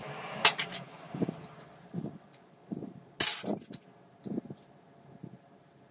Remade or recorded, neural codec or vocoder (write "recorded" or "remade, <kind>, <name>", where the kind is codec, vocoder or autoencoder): recorded